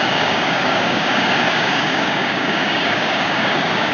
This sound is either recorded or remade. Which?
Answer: remade